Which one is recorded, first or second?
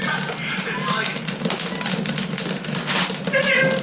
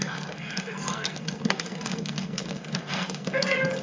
first